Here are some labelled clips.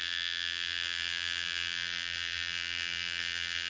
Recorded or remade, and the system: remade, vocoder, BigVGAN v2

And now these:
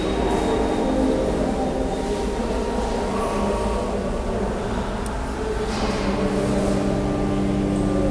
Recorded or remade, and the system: recorded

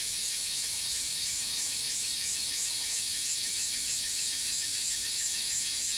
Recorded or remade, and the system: remade, autoencoder, DAC-VAE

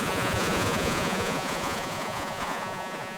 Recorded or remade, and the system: remade, vocoder, Vocos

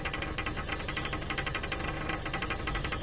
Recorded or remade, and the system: recorded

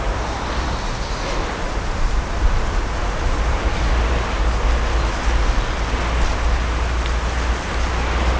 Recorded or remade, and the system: recorded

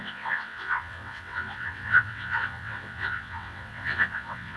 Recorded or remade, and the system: remade, vocoder, WaveNeXt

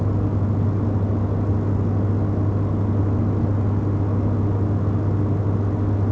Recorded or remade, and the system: recorded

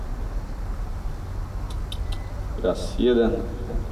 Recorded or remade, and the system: recorded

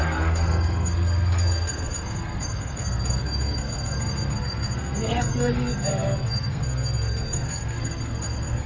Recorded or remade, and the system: remade, codec, SNAC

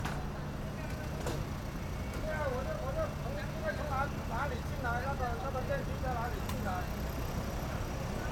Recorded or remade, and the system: recorded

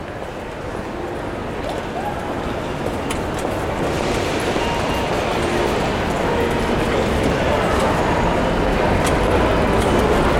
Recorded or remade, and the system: recorded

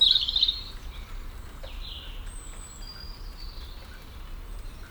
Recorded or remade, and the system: recorded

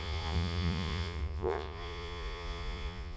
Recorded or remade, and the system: remade, vocoder, Vocos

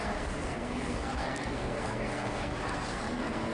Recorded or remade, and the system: remade, codec, SNAC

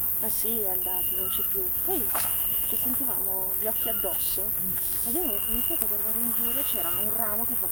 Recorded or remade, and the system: remade, autoencoder, DAC-VAE